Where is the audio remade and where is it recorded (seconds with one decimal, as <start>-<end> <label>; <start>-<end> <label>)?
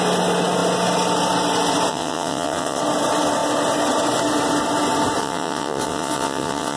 0.0-1.9 recorded; 1.9-2.8 remade; 2.8-5.2 recorded; 5.2-6.8 remade